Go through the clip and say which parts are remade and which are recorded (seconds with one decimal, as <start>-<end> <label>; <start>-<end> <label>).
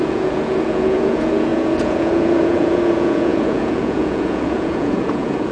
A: 0.0-5.5 remade